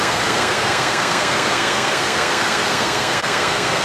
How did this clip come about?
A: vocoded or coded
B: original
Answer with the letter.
A